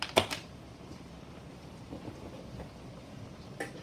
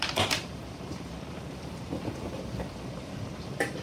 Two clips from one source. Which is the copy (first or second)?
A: second